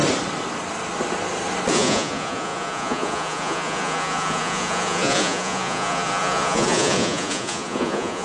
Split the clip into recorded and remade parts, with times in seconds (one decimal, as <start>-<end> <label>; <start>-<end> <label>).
0.0-1.7 recorded; 1.7-8.2 remade

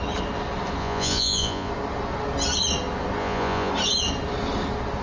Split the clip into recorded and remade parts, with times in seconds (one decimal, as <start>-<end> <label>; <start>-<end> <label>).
0.0-0.8 recorded; 0.8-1.7 remade; 1.7-3.2 recorded; 3.2-3.7 remade; 3.7-5.0 recorded

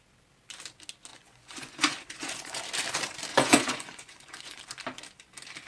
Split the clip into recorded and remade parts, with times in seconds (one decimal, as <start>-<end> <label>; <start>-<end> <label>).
0.0-1.1 recorded; 1.1-2.6 remade; 2.6-3.3 recorded; 3.3-4.6 remade; 4.6-5.7 recorded

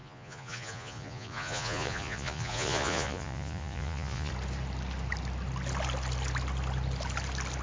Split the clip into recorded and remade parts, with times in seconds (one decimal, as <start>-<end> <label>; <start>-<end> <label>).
0.0-4.3 remade; 4.3-7.6 recorded

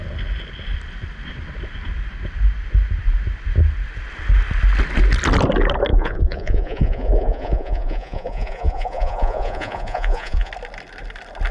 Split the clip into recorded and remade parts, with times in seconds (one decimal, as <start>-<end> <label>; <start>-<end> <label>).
0.0-5.9 recorded; 5.9-10.5 remade; 10.5-11.5 recorded

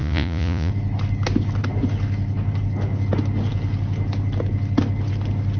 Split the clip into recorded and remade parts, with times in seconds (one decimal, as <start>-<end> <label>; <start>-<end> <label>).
0.0-0.7 remade; 0.7-5.6 recorded

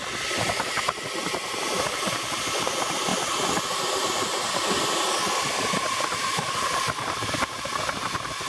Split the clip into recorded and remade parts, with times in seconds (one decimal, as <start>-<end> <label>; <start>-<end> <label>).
0.0-8.5 recorded

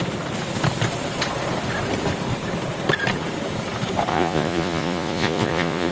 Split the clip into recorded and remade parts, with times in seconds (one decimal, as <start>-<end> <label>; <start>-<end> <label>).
0.0-4.1 recorded; 4.1-5.9 remade